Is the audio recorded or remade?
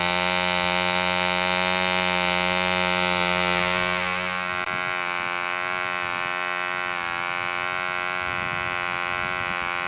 recorded